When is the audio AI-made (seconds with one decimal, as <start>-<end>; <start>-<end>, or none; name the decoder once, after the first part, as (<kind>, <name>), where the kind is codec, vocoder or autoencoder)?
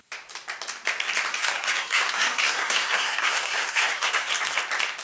1.3-4.3 (codec, SNAC)